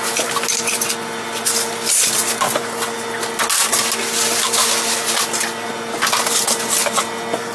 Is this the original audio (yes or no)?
yes